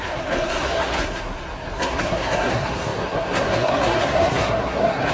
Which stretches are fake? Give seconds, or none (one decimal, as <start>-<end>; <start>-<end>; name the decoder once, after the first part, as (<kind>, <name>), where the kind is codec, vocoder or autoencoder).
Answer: 0.0-5.1 (codec, SNAC)